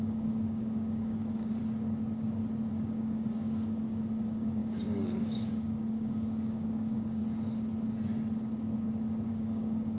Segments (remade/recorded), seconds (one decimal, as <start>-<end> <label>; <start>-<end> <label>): 0.0-1.6 remade; 1.6-2.7 recorded; 2.7-7.2 remade; 7.2-9.3 recorded; 9.3-10.0 remade